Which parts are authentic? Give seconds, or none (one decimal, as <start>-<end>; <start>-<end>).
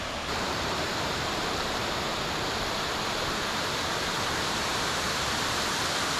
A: 1.8-4.7